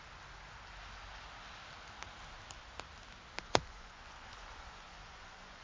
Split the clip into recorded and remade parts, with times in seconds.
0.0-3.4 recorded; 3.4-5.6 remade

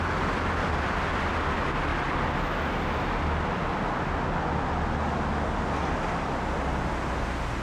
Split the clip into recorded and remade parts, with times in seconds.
0.0-7.6 recorded

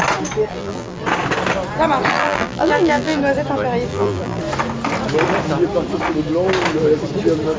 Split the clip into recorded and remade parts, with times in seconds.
0.0-0.5 recorded; 0.5-1.0 remade; 1.0-2.1 recorded; 2.1-3.2 remade; 3.2-3.9 recorded; 3.9-4.4 remade; 4.4-7.6 recorded

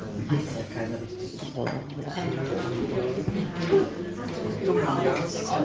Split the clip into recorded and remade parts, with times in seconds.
0.0-1.3 recorded; 1.3-2.2 remade; 2.2-5.6 recorded

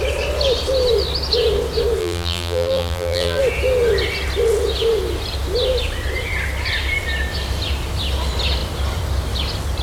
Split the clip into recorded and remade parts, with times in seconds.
0.0-2.0 recorded; 2.0-3.4 remade; 3.4-9.8 recorded